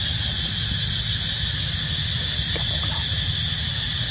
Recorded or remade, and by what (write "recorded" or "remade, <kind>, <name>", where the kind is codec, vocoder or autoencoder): recorded